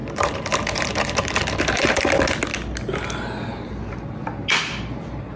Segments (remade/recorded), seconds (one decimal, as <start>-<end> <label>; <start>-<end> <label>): 0.0-2.1 remade; 2.1-5.4 recorded